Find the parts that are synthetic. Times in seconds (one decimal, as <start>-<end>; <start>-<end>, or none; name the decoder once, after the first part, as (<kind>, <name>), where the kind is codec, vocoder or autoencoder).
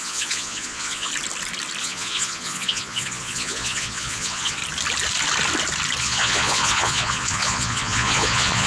0.0-1.1 (vocoder, Vocos); 1.8-4.6; 6.0-8.7